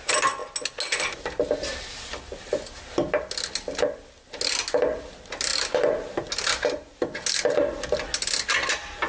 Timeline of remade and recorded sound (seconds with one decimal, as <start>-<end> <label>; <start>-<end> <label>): 0.0-9.1 recorded